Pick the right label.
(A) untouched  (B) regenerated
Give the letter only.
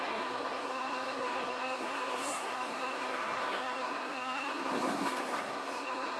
B